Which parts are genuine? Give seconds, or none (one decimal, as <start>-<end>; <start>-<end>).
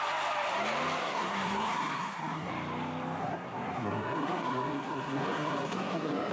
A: 0.0-1.0; 2.5-3.2